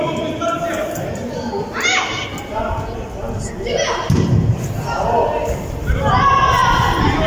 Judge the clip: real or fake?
real